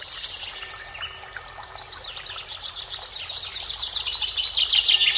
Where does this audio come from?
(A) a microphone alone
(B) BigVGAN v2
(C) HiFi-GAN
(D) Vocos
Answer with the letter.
A